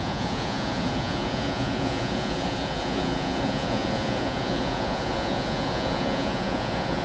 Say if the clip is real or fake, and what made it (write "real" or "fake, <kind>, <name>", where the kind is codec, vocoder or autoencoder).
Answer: fake, vocoder, Vocos